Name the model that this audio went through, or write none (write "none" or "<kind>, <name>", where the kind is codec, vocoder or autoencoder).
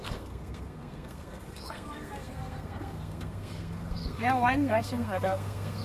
codec, SNAC